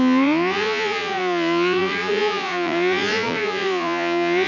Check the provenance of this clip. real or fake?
fake